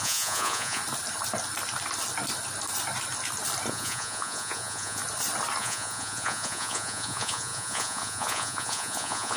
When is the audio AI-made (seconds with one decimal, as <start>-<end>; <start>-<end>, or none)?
0.0-0.8; 3.7-5.0; 5.6-9.4